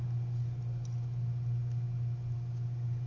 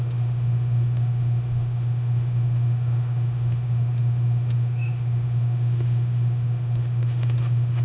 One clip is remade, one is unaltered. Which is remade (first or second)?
second